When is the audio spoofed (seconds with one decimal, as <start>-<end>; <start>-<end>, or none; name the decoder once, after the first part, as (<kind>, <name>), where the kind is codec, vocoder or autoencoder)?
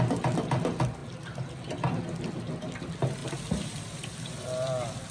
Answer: 1.0-1.5 (vocoder, BigVGAN v2); 3.2-5.1